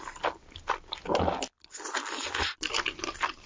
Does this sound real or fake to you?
real